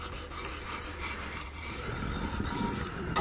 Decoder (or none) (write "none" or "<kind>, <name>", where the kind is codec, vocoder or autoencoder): none